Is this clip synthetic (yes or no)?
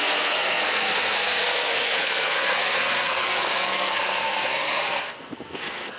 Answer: yes